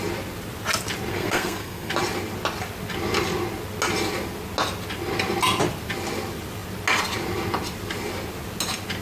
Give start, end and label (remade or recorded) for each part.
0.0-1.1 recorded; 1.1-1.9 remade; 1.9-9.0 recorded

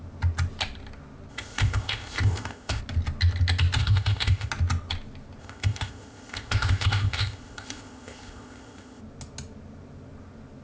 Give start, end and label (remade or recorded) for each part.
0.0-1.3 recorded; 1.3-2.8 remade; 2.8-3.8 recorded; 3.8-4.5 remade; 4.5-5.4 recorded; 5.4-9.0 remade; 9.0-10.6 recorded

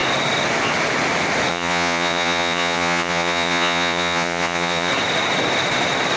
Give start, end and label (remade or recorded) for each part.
0.0-1.5 recorded; 1.5-4.9 remade; 4.9-6.2 recorded

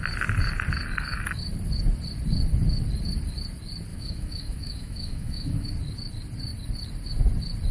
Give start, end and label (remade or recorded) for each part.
0.0-3.9 recorded; 3.9-5.7 remade; 5.7-7.7 recorded

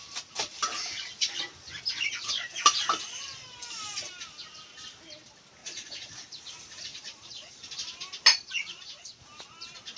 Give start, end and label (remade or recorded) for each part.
0.0-5.6 recorded; 5.6-6.1 remade; 6.1-6.9 recorded; 6.9-7.6 remade; 7.6-8.3 recorded; 8.3-9.2 remade; 9.2-10.0 recorded

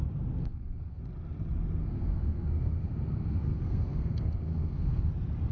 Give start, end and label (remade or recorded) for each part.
0.0-0.4 recorded; 0.4-1.0 remade; 1.0-1.8 recorded; 1.8-5.1 remade; 5.1-5.5 recorded

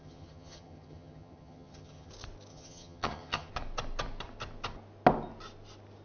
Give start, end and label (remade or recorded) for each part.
0.0-2.1 remade; 2.1-2.5 recorded; 2.5-3.5 remade; 3.5-6.0 recorded